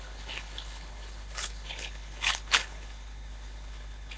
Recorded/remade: remade